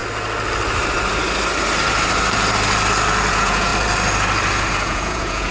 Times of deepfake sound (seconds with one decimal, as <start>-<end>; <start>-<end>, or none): 3.3-3.7; 4.7-5.5